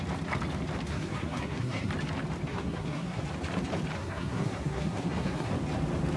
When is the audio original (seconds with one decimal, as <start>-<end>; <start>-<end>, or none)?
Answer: 0.0-0.9; 1.9-2.5; 3.2-4.0; 5.5-6.2